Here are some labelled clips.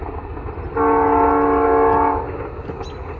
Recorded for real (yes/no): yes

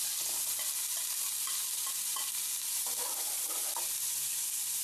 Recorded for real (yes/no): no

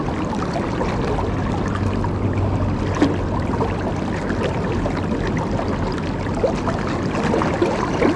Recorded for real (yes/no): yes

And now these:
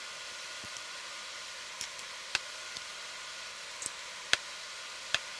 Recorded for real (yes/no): yes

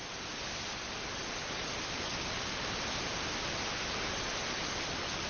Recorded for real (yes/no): yes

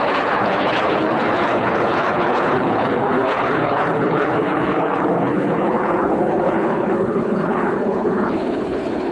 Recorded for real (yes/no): no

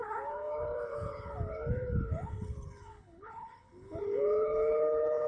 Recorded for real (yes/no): no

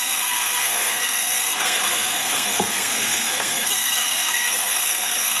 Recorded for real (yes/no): no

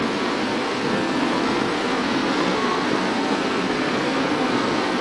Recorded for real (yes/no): no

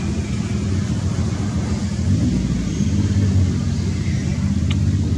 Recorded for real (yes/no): yes